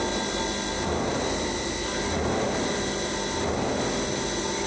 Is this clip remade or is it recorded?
recorded